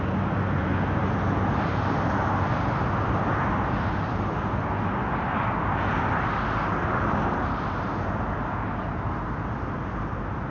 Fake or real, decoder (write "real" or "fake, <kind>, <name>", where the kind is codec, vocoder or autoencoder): real